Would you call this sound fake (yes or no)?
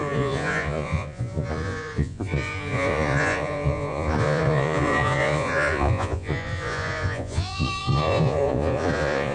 yes